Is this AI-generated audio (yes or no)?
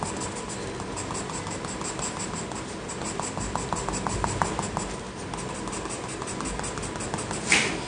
no